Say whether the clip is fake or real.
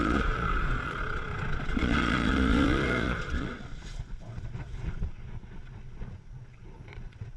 fake